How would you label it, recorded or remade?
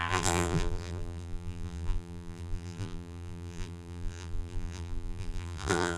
remade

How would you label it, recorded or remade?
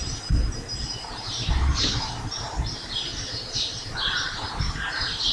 remade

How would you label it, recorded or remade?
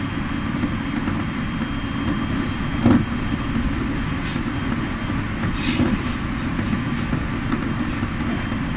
recorded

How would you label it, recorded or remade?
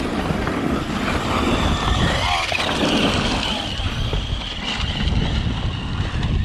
recorded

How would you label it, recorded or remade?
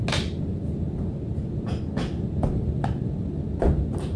recorded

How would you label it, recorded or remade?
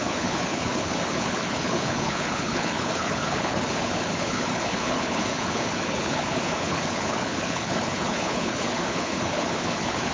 remade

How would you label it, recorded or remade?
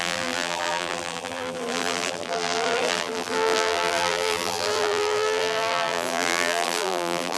remade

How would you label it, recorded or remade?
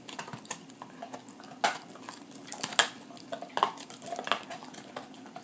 recorded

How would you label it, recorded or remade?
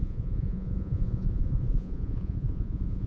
remade